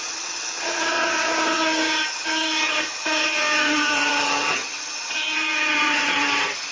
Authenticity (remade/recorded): remade